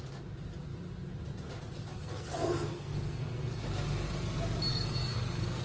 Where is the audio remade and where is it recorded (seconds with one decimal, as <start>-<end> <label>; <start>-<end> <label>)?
0.0-1.9 recorded; 1.9-3.6 remade; 3.6-4.7 recorded; 4.7-5.6 remade